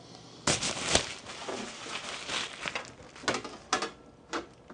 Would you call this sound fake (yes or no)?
no